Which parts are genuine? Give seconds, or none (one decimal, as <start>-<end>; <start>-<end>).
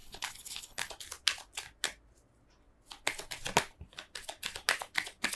0.9-5.4